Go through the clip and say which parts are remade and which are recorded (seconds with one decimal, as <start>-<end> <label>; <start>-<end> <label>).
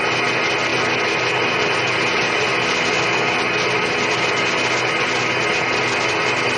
0.0-6.6 recorded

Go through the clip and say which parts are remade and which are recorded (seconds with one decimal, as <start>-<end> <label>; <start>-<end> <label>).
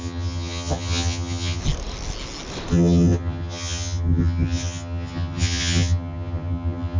0.0-1.6 remade; 1.6-2.7 recorded; 2.7-7.0 remade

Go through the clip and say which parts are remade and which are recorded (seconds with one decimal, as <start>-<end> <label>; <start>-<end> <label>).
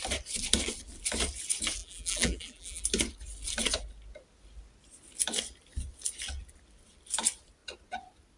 0.0-1.8 recorded; 1.8-2.8 remade; 2.8-8.4 recorded